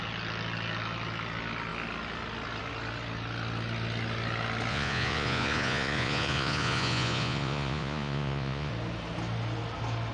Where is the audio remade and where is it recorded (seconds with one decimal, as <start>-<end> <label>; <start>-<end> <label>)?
0.0-4.7 recorded; 4.7-8.7 remade; 8.7-10.1 recorded

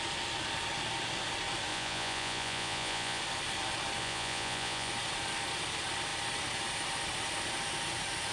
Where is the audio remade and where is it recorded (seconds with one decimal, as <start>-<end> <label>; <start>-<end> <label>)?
0.0-1.7 recorded; 1.7-3.2 remade; 3.2-4.0 recorded; 4.0-4.9 remade; 4.9-8.3 recorded

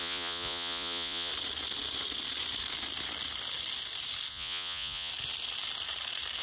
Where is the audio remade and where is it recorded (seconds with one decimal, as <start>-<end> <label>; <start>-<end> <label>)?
0.0-1.3 remade; 1.3-4.3 recorded; 4.3-5.1 remade; 5.1-6.4 recorded